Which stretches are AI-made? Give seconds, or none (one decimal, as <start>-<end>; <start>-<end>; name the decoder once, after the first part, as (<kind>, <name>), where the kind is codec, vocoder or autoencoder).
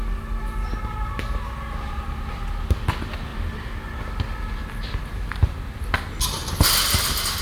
none